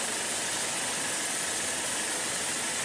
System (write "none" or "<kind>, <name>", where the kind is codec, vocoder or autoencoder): none